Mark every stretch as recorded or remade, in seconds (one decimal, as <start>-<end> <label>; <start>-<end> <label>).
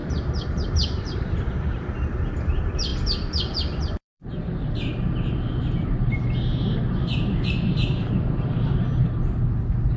0.0-2.9 remade; 2.9-3.8 recorded; 3.8-10.0 remade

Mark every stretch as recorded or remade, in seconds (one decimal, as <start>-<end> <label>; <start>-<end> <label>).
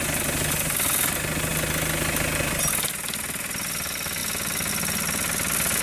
0.0-5.8 recorded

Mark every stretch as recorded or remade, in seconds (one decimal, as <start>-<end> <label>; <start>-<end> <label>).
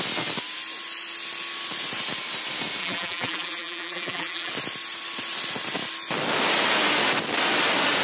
0.0-2.8 recorded; 2.8-4.5 remade; 4.5-8.0 recorded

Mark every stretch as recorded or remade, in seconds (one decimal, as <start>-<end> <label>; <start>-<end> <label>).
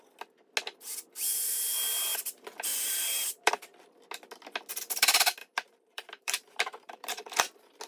0.0-2.7 recorded; 2.7-3.5 remade; 3.5-5.4 recorded; 5.4-7.2 remade; 7.2-7.9 recorded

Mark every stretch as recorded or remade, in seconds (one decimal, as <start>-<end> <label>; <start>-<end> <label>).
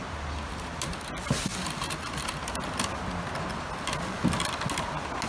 0.0-1.5 recorded; 1.5-2.5 remade; 2.5-5.3 recorded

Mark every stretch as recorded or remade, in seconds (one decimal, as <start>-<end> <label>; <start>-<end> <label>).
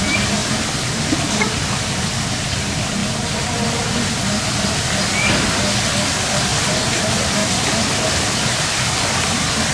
0.0-3.0 remade; 3.0-5.0 recorded; 5.0-7.4 remade; 7.4-7.9 recorded; 7.9-9.7 remade